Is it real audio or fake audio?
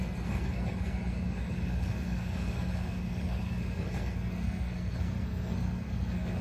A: fake